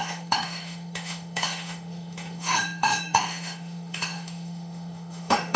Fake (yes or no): yes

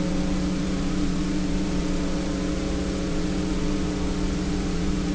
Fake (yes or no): yes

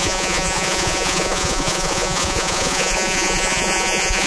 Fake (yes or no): yes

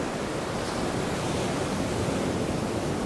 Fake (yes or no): no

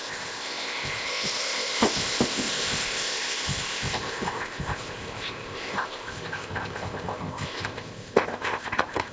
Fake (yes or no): yes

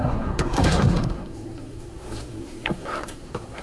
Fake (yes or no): yes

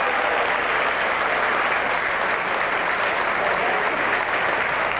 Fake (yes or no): no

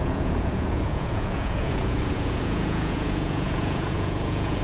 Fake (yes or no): yes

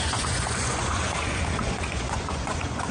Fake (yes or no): yes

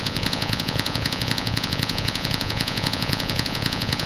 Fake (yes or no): yes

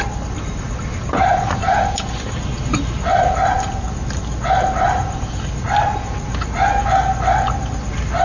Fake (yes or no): no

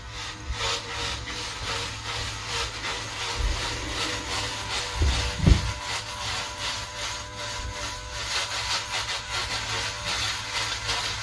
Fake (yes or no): no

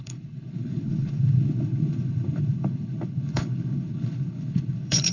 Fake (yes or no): yes